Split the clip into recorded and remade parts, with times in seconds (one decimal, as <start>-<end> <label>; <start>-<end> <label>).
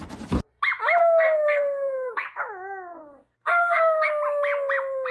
0.0-1.0 recorded; 1.0-2.4 remade; 2.4-2.9 recorded; 2.9-4.1 remade; 4.1-5.1 recorded